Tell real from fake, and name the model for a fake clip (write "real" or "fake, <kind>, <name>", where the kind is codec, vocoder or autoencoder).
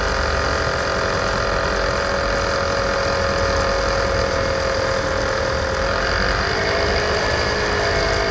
real